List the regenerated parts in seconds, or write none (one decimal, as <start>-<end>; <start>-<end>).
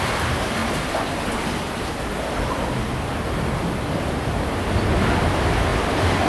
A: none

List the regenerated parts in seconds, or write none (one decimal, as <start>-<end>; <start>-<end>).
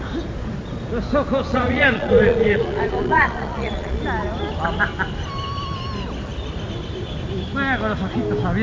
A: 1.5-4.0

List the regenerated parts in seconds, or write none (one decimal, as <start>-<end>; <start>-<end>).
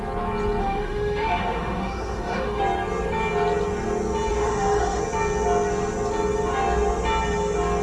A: 0.6-2.6; 4.3-5.0